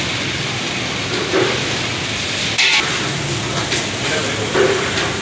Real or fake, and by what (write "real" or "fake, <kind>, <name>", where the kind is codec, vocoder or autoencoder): real